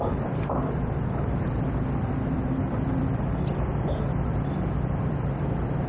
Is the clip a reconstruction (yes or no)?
yes